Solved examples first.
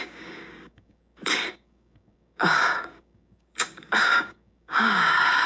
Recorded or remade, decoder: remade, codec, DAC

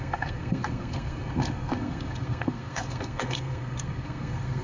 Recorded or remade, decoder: remade, codec, SNAC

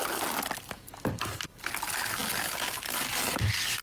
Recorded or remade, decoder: recorded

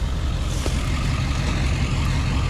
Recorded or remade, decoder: recorded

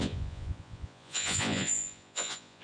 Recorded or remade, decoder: remade, vocoder, Vocos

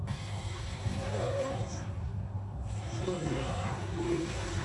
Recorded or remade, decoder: remade, codec, SNAC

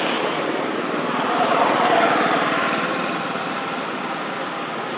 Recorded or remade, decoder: recorded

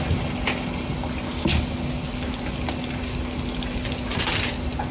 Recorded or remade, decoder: recorded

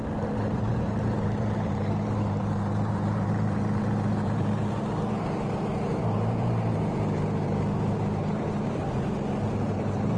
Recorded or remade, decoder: remade, vocoder, BigVGAN v2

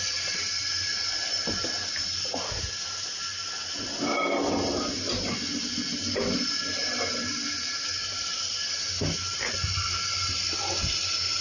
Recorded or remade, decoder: recorded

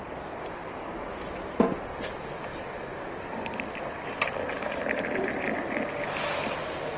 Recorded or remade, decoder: recorded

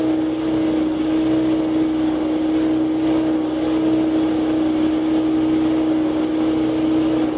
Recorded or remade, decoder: recorded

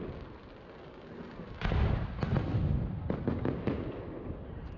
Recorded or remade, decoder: recorded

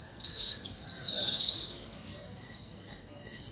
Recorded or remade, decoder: remade, codec, SNAC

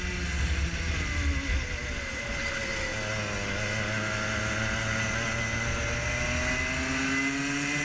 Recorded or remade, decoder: recorded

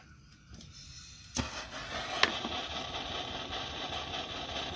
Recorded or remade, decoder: recorded